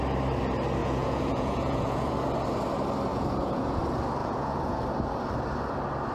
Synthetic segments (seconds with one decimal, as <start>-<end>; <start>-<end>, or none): 0.8-2.1; 3.1-3.8; 4.2-4.8